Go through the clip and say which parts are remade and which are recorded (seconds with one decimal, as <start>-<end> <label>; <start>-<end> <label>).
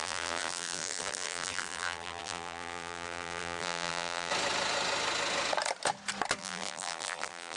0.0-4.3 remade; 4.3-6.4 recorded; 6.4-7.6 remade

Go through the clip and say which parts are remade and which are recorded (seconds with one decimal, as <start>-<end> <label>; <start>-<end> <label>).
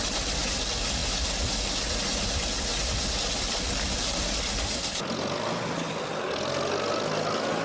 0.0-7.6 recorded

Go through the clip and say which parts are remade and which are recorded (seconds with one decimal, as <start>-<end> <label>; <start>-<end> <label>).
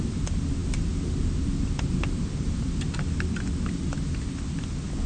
0.0-5.1 recorded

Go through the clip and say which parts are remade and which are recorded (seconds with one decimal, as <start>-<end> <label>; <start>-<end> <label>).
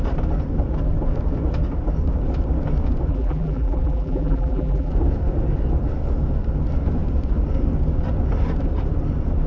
0.0-3.1 recorded; 3.1-4.9 remade; 4.9-9.5 recorded